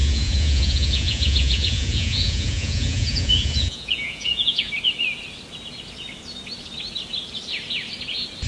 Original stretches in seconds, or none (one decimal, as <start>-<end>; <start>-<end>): 4.7-8.5